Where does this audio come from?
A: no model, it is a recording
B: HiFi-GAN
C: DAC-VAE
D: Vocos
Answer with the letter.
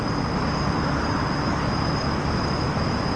A